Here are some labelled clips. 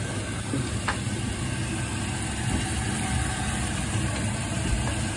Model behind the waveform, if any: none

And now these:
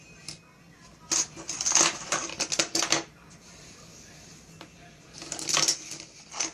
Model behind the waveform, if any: none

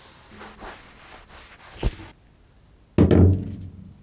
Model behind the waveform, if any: none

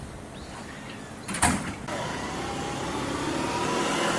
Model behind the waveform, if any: none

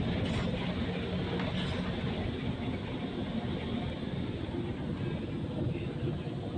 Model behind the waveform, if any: none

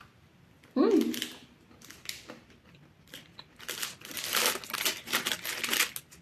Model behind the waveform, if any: none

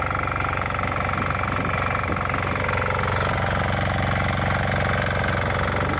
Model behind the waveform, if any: none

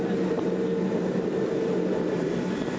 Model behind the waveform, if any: none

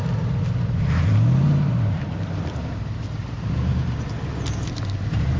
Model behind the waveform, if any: vocoder, BigVGAN v2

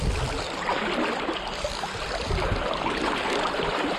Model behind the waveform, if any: none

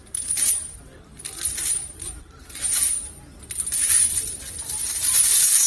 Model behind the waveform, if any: vocoder, BigVGAN v2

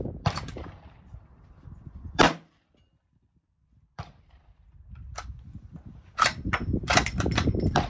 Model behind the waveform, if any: vocoder, BigVGAN v2